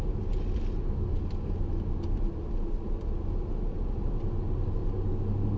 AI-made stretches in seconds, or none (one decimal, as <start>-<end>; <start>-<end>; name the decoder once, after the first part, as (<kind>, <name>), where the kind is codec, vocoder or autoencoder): none